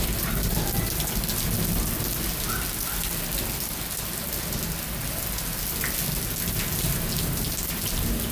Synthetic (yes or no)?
no